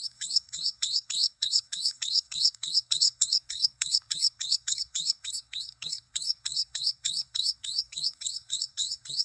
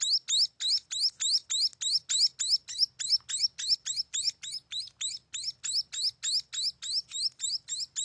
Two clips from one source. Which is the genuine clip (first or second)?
second